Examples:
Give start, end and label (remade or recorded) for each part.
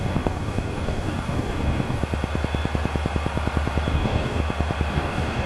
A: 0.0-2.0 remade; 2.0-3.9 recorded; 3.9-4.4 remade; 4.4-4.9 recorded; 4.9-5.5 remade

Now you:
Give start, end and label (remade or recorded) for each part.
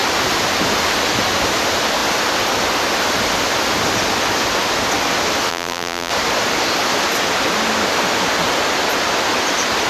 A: 0.0-5.5 recorded; 5.5-6.1 remade; 6.1-9.9 recorded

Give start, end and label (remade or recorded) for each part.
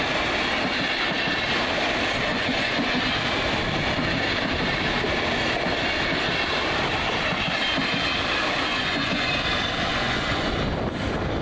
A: 0.0-2.3 recorded; 2.3-3.0 remade; 3.0-8.7 recorded; 8.7-9.3 remade; 9.3-9.9 recorded; 9.9-10.5 remade; 10.5-11.4 recorded